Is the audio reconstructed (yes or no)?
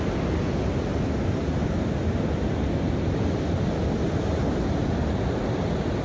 no